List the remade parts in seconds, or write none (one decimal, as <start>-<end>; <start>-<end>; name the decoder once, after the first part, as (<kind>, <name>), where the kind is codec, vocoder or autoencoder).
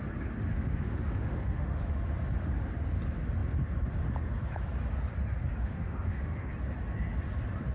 0.5-1.9 (autoencoder, DAC-VAE); 5.6-6.5